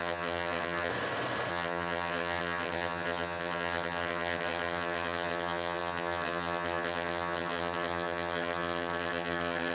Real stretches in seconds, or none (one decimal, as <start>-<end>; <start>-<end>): 0.9-1.5